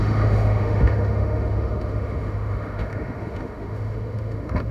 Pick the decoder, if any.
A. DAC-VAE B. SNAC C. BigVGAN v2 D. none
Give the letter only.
A